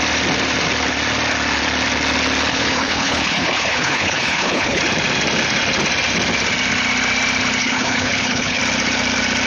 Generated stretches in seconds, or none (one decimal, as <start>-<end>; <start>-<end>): 2.5-4.8; 7.6-8.6